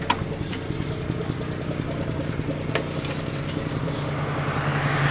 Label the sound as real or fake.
real